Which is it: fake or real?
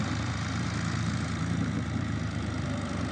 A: fake